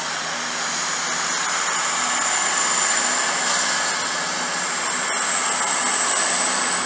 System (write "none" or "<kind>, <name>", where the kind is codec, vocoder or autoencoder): none